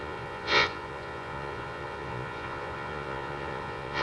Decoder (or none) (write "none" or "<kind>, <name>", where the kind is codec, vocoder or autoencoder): vocoder, Vocos